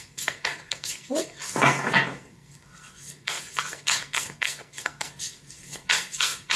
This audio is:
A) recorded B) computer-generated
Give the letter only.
B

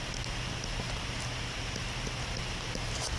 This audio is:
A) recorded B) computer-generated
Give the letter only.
A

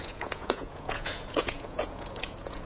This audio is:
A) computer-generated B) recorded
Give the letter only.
A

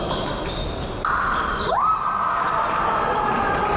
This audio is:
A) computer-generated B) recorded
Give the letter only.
B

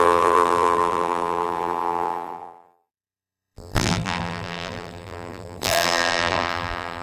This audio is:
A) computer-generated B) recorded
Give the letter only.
A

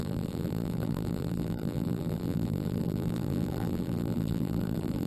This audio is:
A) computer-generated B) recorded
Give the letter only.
A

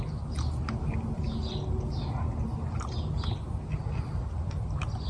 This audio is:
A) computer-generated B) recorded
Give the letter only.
B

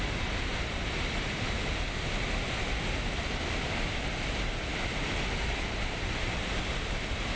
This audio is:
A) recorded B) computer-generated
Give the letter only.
A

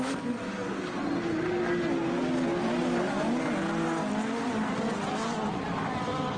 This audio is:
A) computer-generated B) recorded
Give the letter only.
B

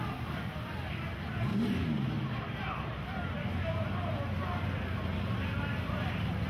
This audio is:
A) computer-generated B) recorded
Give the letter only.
B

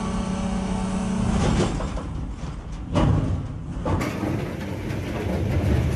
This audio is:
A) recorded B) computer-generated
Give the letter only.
A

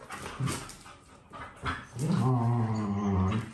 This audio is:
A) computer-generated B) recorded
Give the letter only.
B